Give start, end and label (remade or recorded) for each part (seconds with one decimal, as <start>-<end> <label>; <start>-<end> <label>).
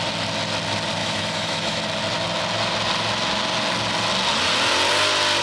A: 0.0-1.0 recorded; 1.0-1.8 remade; 1.8-5.4 recorded